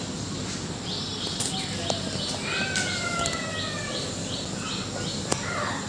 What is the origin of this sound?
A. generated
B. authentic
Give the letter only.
B